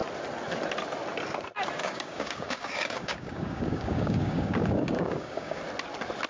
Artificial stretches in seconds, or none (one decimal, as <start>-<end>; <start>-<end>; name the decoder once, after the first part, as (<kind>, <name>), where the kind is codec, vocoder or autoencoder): 1.8-5.6 (codec, DAC)